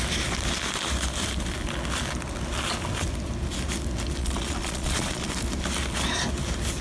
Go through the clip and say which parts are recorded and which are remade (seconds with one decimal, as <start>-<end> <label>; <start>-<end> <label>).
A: 0.0-4.2 recorded; 4.2-5.3 remade; 5.3-6.8 recorded